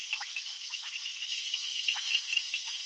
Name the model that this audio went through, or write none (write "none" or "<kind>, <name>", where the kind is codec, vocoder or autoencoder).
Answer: autoencoder, DAC-VAE